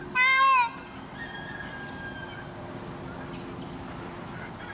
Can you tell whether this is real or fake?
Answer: real